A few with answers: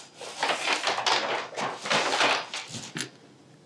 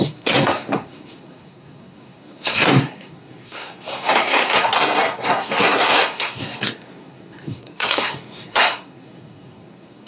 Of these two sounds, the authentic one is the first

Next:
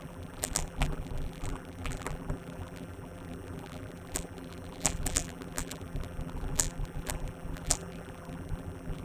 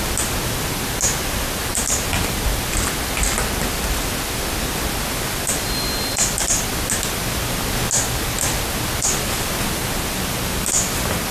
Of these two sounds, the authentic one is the second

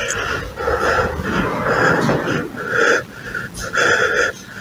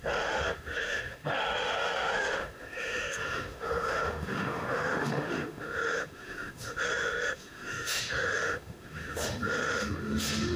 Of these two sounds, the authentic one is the first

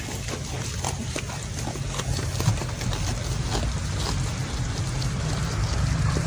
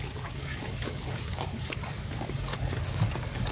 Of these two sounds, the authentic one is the first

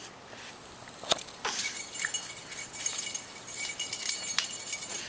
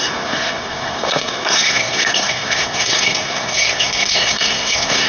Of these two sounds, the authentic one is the first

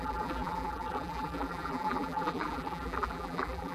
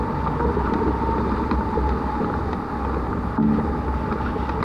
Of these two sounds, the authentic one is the second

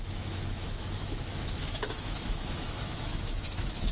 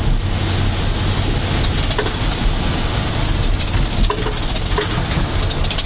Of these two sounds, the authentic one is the second